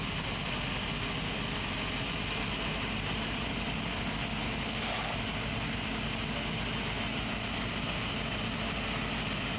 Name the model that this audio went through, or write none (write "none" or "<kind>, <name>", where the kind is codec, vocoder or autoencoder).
none